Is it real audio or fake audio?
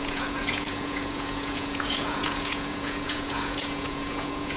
fake